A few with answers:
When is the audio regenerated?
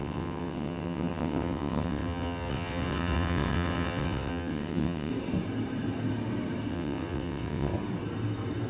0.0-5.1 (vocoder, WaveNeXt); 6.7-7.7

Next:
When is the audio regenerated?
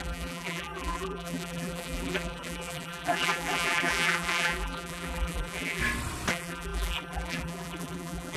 0.0-5.8 (vocoder, BigVGAN v2); 6.3-8.4